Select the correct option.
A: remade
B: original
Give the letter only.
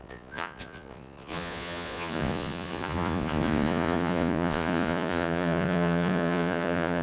A